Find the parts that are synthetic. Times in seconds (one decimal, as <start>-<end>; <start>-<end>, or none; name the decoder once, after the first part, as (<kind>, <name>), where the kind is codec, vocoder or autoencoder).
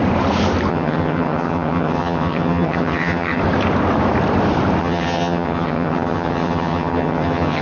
0.7-3.4 (vocoder, HiFi-GAN); 4.8-7.6